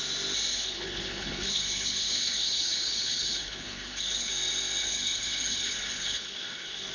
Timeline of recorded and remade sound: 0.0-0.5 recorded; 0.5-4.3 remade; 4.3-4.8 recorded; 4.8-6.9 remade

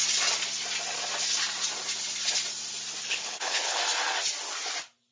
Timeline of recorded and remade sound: 0.0-3.1 recorded; 3.1-3.8 remade; 3.8-5.1 recorded